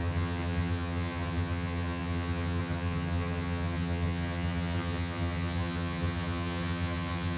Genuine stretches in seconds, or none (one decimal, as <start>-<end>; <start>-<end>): none